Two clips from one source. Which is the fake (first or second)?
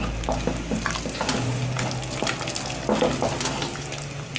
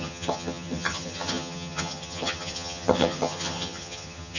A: second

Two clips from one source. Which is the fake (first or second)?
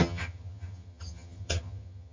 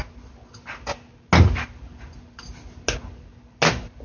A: first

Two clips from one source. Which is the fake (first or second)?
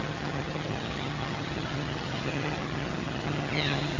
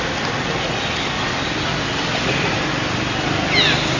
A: first